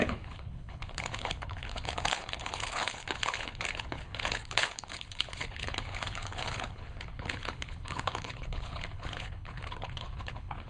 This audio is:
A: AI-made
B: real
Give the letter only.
A